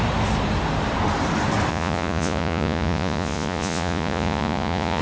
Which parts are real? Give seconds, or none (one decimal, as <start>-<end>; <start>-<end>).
0.0-1.7